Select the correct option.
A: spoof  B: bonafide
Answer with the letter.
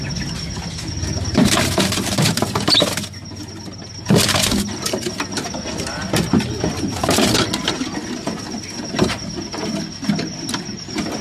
B